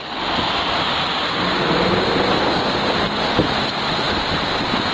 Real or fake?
real